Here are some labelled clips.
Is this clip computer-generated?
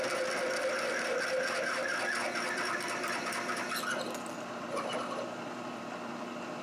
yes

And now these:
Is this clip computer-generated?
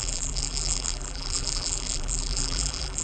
yes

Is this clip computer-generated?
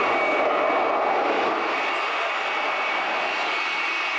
no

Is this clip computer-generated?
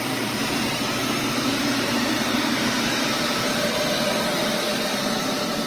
yes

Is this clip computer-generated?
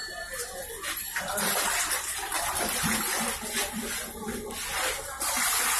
yes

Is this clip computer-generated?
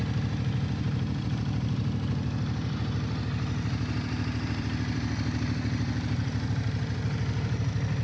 yes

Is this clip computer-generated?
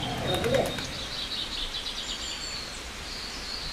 no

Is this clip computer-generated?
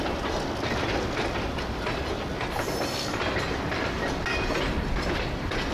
no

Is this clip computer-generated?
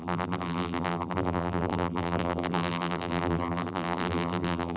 yes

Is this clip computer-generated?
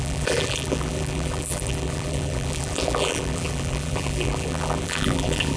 yes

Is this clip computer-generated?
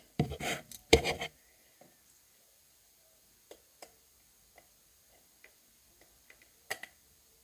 yes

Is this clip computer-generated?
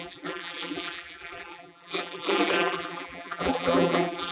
yes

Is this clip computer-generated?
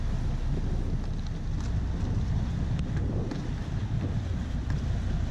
no